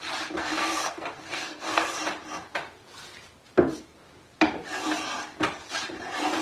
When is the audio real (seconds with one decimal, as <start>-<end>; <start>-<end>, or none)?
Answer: 0.0-0.4; 1.9-6.4